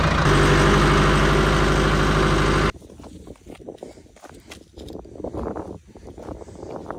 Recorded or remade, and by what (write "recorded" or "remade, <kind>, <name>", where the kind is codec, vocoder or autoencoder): recorded